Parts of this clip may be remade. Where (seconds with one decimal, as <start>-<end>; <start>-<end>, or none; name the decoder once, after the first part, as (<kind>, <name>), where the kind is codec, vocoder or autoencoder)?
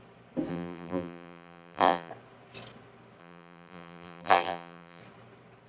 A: 0.5-2.1 (vocoder, BigVGAN v2); 3.2-5.0